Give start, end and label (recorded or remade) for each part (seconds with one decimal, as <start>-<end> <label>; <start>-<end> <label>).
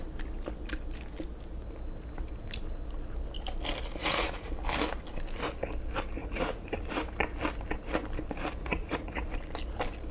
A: 0.0-4.0 recorded; 4.0-4.5 remade; 4.5-6.2 recorded; 6.2-7.0 remade; 7.0-8.6 recorded; 8.6-9.3 remade; 9.3-10.1 recorded